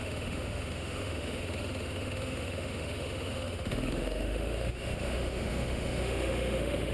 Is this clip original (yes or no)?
no